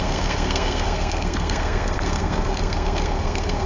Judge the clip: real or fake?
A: fake